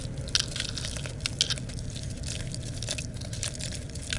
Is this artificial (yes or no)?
no